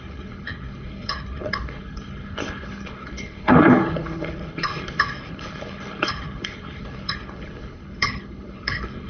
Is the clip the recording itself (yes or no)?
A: no